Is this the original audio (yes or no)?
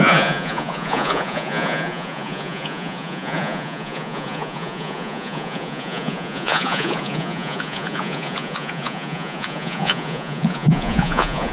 no